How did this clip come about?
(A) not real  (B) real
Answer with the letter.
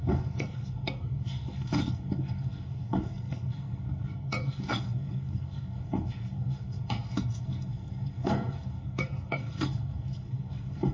A